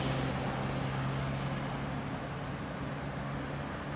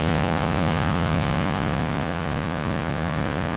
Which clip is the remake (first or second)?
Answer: second